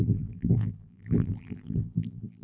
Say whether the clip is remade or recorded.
remade